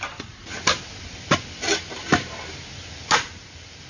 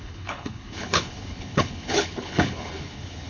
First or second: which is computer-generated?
second